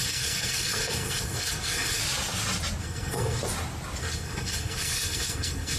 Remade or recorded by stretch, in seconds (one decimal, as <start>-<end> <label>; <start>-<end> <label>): 0.0-2.0 remade; 2.0-2.8 recorded; 2.8-3.4 remade; 3.4-4.0 recorded; 4.0-5.8 remade